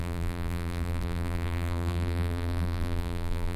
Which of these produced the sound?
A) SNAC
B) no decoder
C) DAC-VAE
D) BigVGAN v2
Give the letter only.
D